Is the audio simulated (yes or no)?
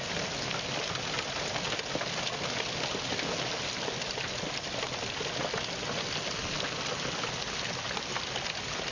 no